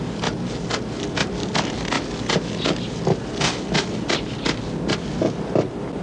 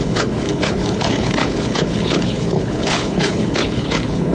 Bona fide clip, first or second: first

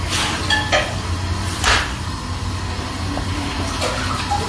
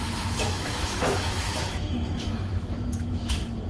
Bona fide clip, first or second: first